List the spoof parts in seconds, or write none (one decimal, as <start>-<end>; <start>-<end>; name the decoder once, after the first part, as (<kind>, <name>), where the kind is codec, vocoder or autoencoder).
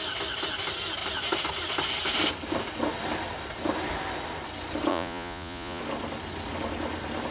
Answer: 4.9-5.8 (vocoder, Vocos)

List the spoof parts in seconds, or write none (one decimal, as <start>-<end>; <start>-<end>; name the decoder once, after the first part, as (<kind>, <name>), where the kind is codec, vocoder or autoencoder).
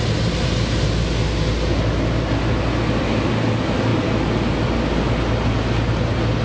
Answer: none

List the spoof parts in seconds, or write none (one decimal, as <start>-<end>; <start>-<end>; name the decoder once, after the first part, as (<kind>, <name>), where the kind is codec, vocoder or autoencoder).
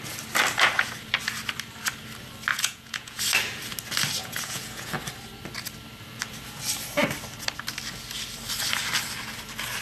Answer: 2.5-3.2 (vocoder, Vocos); 4.2-4.9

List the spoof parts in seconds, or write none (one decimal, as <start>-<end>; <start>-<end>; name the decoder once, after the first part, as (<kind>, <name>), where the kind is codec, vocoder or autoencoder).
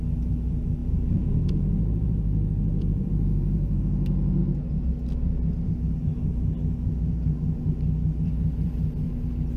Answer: 0.8-3.8 (vocoder, Vocos)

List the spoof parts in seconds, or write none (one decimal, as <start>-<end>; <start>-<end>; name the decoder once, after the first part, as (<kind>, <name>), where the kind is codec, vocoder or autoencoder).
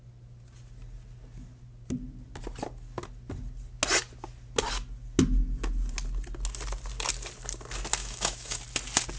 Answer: 8.0-8.6 (autoencoder, DAC-VAE)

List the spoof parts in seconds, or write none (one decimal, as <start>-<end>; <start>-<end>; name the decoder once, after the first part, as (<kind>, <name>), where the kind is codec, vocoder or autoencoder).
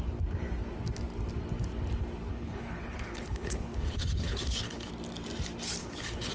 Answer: 2.3-4.9 (codec, HILCodec); 5.8-6.3